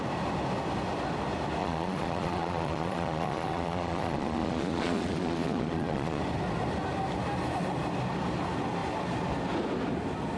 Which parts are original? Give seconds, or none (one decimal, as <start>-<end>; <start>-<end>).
0.0-1.6; 6.2-10.4